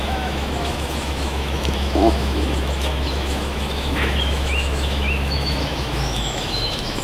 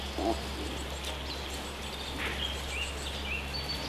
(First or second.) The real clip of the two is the second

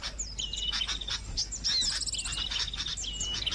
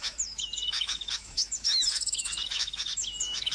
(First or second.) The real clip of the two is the first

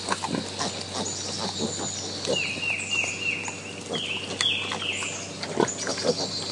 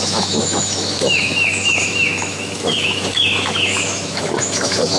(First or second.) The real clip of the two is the first